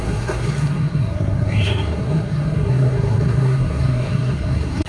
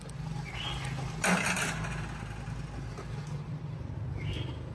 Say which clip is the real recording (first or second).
second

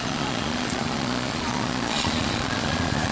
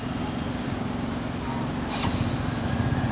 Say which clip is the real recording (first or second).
second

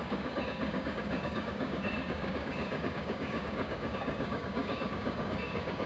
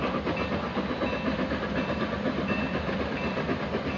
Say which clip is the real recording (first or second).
second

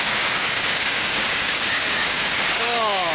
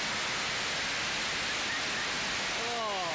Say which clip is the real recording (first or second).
second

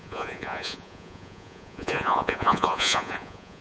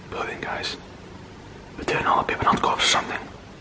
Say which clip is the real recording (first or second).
second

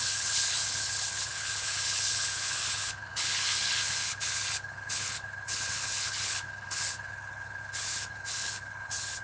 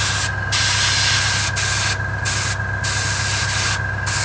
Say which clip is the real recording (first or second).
second